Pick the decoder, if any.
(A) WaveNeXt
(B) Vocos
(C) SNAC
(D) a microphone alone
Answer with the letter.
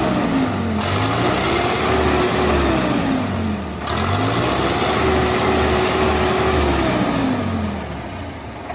D